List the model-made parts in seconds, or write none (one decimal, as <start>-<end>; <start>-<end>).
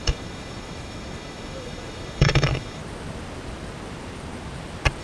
0.0-2.8